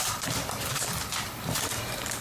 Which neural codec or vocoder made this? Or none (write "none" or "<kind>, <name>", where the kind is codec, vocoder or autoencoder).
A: vocoder, BigVGAN v2